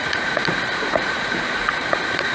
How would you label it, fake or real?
fake